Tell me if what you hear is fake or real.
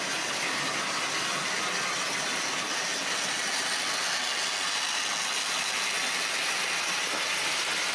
real